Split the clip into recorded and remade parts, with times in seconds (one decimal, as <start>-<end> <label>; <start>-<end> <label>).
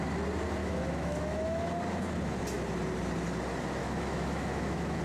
0.0-0.6 recorded; 0.6-1.7 remade; 1.7-3.8 recorded; 3.8-5.0 remade